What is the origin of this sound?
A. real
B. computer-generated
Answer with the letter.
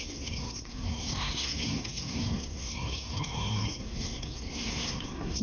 B